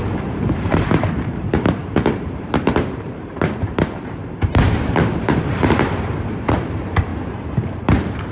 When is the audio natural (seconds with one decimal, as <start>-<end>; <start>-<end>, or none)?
7.1-7.8